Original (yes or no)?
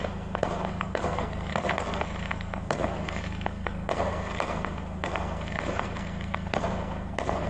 no